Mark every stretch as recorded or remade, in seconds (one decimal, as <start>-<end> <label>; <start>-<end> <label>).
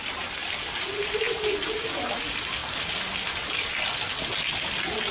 0.0-5.1 recorded